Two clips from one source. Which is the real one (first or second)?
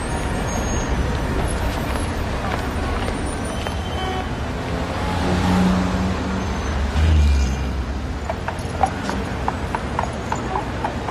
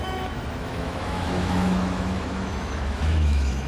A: first